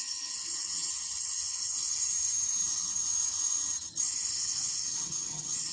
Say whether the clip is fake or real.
fake